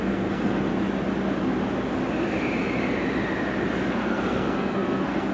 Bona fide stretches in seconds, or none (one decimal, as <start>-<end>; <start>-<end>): 0.7-3.9